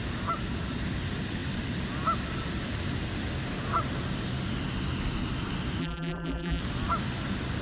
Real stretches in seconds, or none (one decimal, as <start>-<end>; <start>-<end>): 0.0-5.8; 6.6-7.6